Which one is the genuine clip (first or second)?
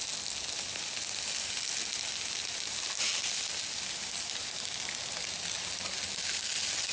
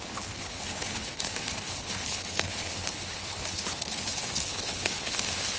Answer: first